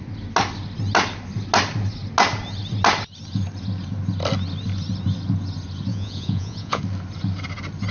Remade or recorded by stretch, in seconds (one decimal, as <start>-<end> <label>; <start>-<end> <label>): 0.0-5.9 recorded; 5.9-6.8 remade; 6.8-7.9 recorded